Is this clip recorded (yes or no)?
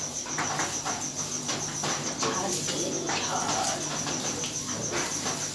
yes